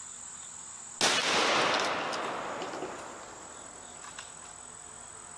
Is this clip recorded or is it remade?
recorded